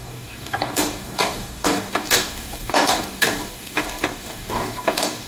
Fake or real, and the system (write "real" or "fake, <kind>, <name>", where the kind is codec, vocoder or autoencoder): fake, codec, DAC